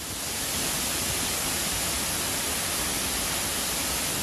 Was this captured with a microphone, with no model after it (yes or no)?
yes